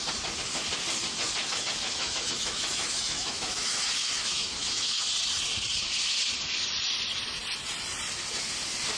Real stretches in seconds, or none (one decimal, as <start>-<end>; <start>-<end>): 0.0-1.4; 5.0-9.0